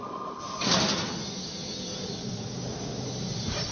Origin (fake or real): real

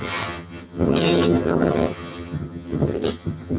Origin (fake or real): fake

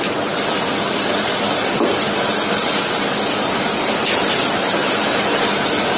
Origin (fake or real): real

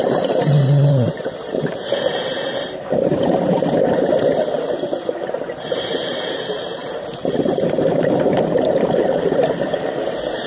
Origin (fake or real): fake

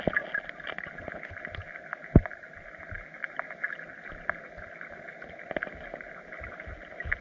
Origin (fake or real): real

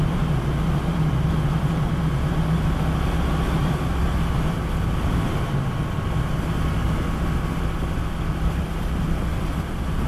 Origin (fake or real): real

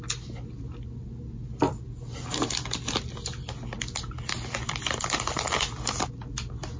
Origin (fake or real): real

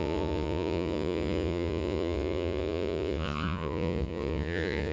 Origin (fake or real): fake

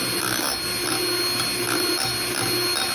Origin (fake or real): real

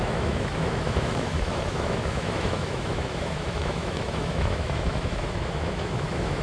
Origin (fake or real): fake